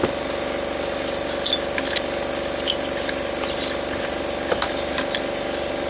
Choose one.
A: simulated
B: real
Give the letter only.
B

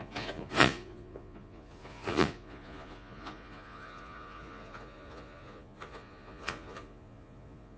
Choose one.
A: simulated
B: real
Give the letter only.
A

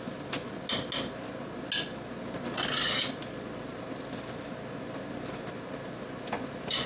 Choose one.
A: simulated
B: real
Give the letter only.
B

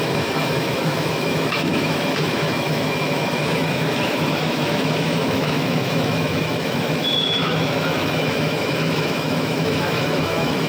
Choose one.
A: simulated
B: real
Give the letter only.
A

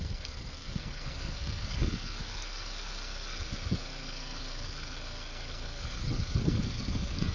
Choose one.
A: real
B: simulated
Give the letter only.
B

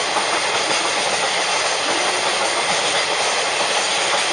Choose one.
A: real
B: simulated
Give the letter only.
A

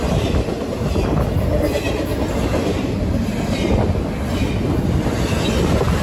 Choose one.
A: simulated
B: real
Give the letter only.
B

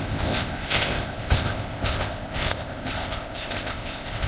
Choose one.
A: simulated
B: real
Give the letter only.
A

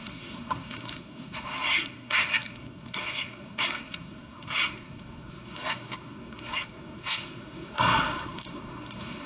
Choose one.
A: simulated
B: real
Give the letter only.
A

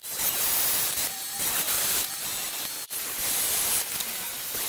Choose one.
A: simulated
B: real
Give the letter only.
B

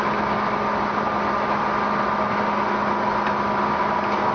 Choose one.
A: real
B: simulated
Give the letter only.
A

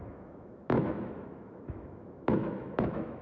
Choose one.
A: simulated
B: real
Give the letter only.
A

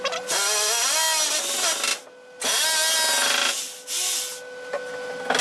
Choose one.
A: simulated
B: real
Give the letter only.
B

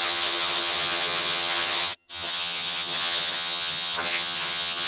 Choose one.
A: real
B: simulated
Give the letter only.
B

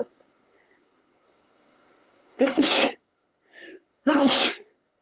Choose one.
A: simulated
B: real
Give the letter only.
A